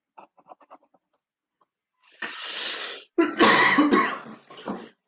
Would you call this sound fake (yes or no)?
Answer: no